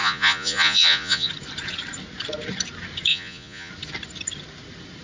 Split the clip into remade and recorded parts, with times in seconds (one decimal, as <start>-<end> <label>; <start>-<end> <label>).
0.0-1.3 remade; 1.3-3.1 recorded; 3.1-3.7 remade; 3.7-5.0 recorded